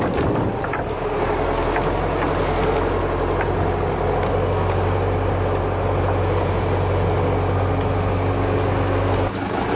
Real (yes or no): yes